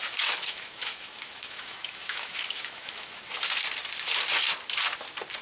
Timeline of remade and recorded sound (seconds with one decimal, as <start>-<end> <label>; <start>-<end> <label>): 0.0-3.2 remade; 3.2-5.4 recorded